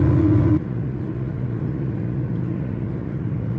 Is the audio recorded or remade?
remade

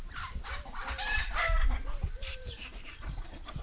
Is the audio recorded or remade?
remade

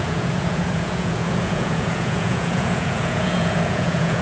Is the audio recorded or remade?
remade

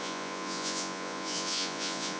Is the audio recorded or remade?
remade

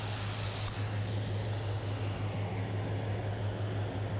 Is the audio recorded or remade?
recorded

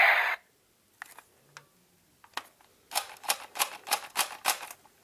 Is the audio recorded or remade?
recorded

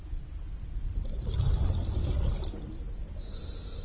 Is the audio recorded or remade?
recorded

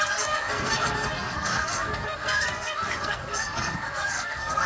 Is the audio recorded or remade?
remade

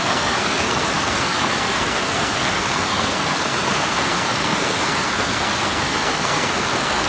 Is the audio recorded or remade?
remade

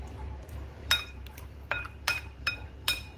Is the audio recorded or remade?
remade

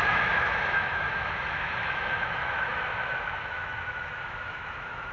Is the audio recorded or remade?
remade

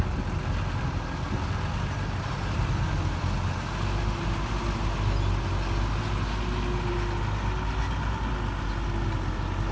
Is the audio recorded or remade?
recorded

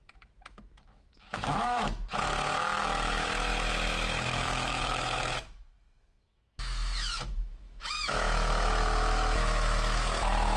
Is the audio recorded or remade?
remade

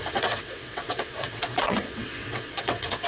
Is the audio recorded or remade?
remade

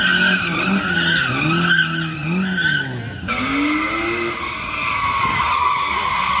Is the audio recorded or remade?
recorded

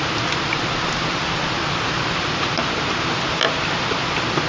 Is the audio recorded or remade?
recorded